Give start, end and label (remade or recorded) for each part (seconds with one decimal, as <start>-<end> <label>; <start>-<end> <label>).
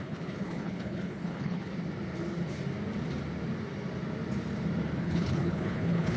0.0-1.7 remade; 1.7-5.0 recorded; 5.0-6.2 remade